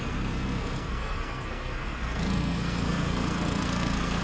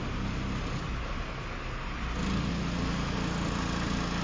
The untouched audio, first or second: second